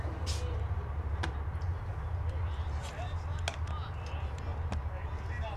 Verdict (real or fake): real